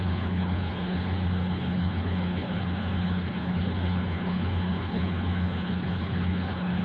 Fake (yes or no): yes